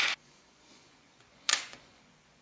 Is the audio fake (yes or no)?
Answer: yes